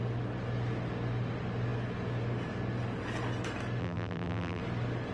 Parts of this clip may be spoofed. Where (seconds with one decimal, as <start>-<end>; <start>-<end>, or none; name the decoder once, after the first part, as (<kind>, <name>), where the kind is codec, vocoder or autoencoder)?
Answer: 3.8-4.6 (vocoder, BigVGAN v2)